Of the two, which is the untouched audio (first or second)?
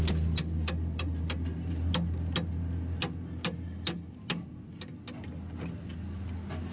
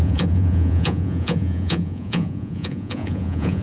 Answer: first